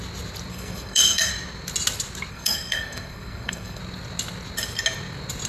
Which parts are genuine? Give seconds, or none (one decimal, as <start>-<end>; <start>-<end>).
0.0-0.5; 1.3-2.3; 3.8-5.5